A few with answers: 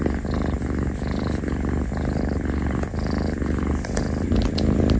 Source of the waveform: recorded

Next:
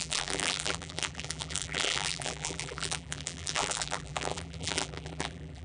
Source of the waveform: remade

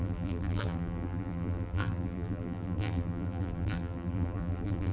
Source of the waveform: remade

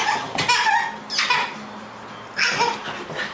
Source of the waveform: recorded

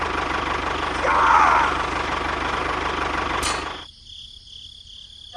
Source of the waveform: recorded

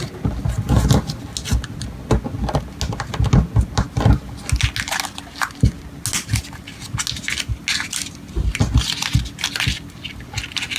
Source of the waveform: recorded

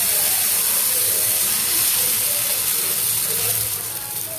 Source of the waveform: remade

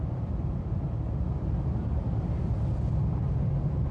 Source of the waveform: remade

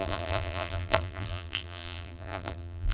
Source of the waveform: remade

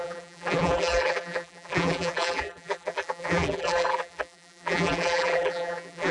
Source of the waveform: remade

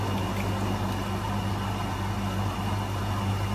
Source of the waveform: recorded